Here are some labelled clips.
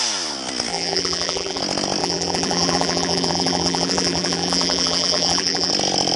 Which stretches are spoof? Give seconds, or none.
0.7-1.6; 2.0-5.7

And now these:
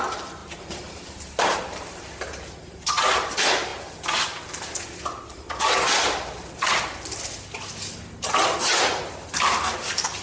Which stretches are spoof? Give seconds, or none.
0.4-2.2

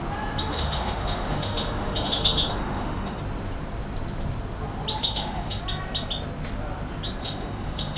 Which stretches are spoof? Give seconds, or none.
0.5-3.2; 5.0-5.6; 7.2-8.0